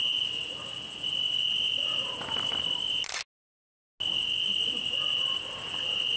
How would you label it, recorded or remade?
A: recorded